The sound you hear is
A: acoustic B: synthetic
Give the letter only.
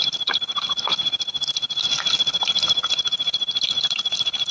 A